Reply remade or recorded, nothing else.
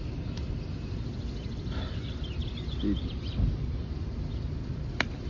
recorded